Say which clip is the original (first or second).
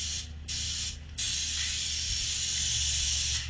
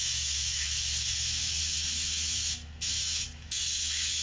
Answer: first